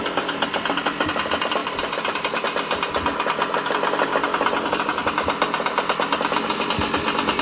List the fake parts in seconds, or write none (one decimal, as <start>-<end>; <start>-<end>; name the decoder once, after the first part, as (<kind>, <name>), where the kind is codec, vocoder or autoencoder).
none